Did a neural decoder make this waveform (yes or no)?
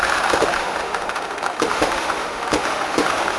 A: yes